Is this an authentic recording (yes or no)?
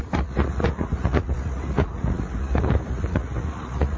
no